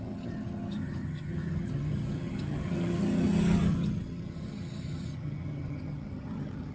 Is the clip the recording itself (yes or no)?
no